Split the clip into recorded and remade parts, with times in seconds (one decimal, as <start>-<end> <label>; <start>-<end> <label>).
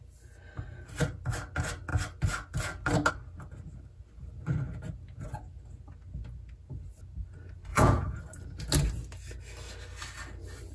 0.0-7.7 recorded; 7.7-8.2 remade; 8.2-10.7 recorded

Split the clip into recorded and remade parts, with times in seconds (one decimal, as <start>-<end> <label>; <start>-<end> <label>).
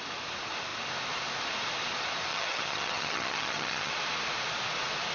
0.0-2.3 recorded; 2.3-3.9 remade; 3.9-5.1 recorded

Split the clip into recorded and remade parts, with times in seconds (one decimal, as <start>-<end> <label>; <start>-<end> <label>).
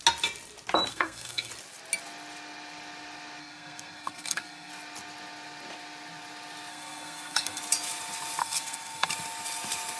0.0-0.9 recorded; 0.9-1.5 remade; 1.5-3.4 recorded; 3.4-4.7 remade; 4.7-6.7 recorded; 6.7-7.6 remade; 7.6-8.4 recorded; 8.4-9.1 remade; 9.1-10.0 recorded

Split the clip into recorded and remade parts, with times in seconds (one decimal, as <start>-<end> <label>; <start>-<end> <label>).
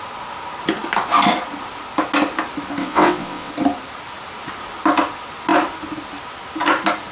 0.0-2.8 recorded; 2.8-3.5 remade; 3.5-7.1 recorded